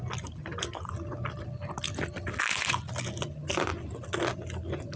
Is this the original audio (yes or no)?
yes